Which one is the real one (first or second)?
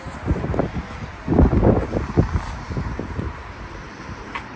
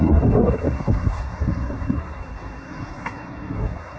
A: first